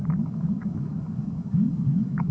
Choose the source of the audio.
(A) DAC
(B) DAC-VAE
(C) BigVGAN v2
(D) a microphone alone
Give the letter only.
A